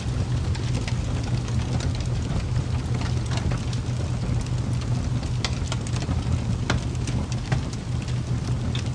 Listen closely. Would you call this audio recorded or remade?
recorded